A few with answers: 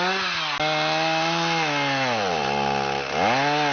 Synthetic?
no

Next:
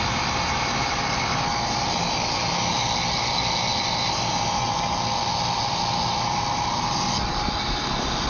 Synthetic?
no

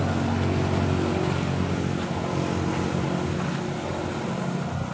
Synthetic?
no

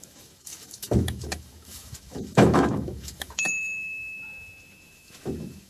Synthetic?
yes